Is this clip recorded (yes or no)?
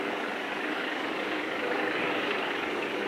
no